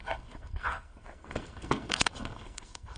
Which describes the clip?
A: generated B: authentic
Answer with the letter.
A